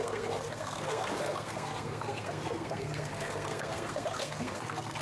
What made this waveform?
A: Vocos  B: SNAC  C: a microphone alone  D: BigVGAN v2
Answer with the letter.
B